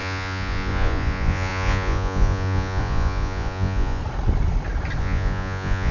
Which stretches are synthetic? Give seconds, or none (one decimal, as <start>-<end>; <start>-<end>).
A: 0.0-4.0; 5.0-5.9